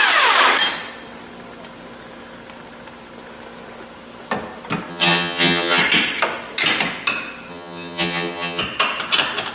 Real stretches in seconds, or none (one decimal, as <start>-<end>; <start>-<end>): 0.0-4.9; 5.8-7.5; 8.6-9.5